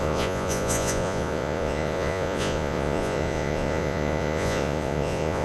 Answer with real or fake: fake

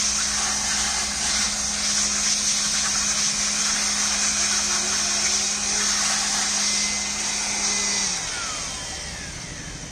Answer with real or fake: real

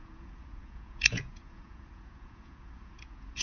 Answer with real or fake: fake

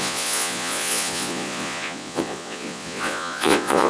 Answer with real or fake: fake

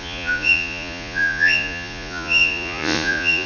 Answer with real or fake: fake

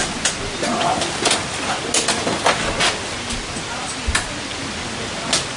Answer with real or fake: real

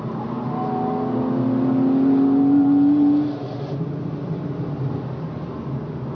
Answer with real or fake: real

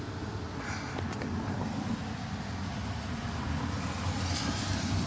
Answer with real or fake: real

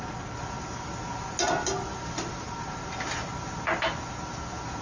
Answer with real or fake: real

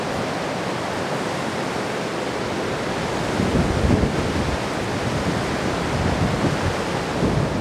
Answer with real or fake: real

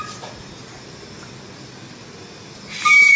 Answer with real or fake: real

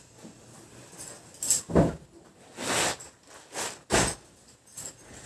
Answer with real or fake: real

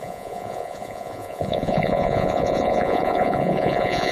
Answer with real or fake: fake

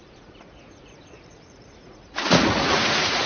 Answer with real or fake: fake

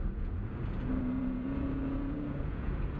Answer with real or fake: fake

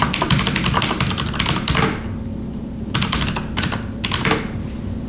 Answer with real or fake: real